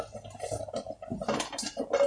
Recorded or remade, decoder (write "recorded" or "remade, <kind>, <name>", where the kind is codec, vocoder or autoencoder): recorded